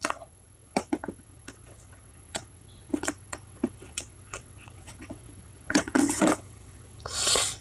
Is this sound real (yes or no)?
no